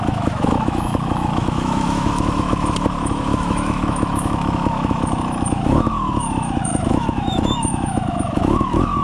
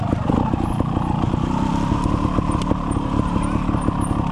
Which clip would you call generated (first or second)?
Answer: first